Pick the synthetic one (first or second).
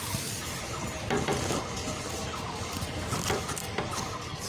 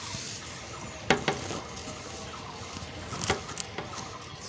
first